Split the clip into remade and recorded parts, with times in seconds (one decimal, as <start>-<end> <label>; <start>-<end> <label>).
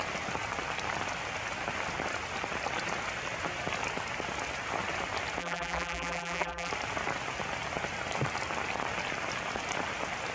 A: 0.0-5.4 recorded; 5.4-6.7 remade; 6.7-10.3 recorded